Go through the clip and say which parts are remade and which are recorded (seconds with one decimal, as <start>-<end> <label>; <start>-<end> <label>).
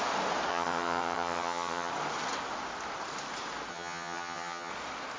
0.0-0.5 recorded; 0.5-1.9 remade; 1.9-3.7 recorded; 3.7-4.7 remade; 4.7-5.2 recorded